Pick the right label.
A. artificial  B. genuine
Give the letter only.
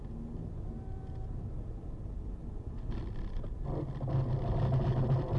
B